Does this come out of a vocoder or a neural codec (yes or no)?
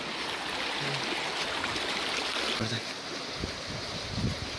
no